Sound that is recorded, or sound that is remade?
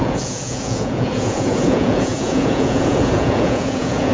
remade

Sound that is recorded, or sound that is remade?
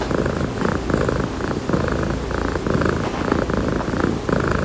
recorded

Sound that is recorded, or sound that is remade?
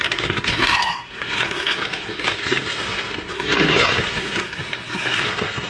remade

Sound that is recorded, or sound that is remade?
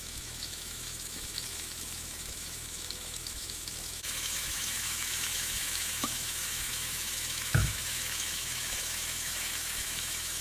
remade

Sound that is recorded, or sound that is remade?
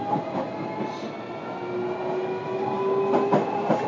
recorded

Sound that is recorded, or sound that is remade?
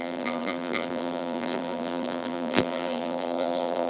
remade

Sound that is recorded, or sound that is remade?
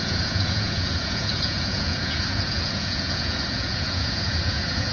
remade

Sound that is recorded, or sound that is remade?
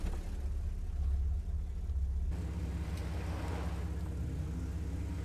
recorded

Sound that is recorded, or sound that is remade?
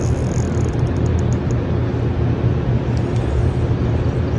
recorded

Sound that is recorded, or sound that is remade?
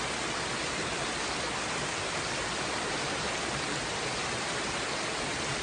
recorded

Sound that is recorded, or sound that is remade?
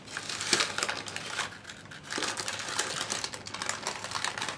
recorded